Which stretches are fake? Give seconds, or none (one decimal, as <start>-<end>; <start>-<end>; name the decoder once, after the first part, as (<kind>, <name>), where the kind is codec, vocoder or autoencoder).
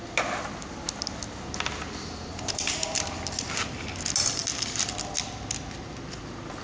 none